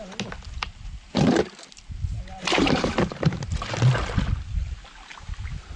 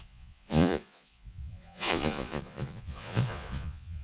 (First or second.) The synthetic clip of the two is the second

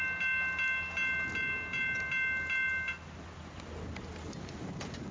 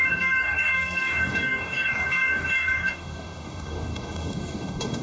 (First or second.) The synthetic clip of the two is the second